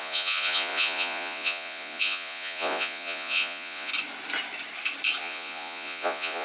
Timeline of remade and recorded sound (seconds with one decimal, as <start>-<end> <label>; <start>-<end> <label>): 0.0-3.9 remade; 3.9-5.2 recorded; 5.2-6.4 remade

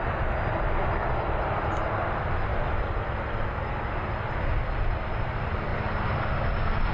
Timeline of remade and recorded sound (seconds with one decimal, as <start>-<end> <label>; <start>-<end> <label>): 0.0-6.9 recorded

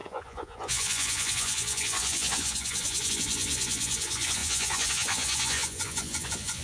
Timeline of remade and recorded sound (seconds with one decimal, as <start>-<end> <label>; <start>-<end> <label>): 0.0-6.6 remade